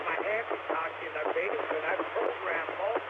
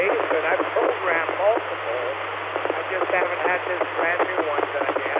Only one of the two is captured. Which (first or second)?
second